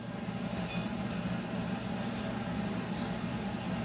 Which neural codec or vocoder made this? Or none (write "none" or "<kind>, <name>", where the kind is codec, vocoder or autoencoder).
none